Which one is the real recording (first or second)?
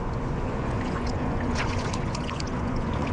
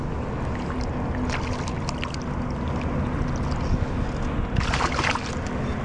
second